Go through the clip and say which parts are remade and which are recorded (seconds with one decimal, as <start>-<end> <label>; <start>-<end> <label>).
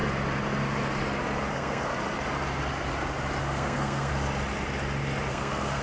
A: 0.0-1.5 recorded; 1.5-1.9 remade; 1.9-3.4 recorded; 3.4-4.1 remade; 4.1-5.3 recorded; 5.3-5.8 remade